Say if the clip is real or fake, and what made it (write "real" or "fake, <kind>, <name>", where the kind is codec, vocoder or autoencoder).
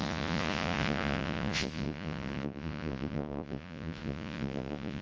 fake, vocoder, Vocos